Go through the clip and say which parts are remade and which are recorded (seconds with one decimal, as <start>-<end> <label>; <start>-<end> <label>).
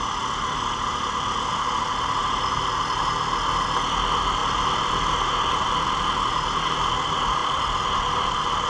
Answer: 0.0-4.4 recorded; 4.4-5.1 remade; 5.1-7.4 recorded; 7.4-7.9 remade; 7.9-8.7 recorded